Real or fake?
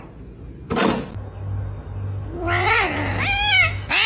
real